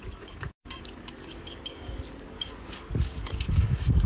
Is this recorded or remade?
remade